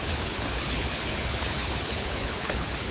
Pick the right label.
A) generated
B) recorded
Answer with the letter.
A